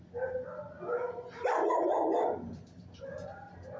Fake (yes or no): no